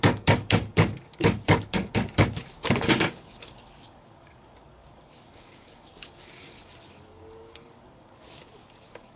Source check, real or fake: fake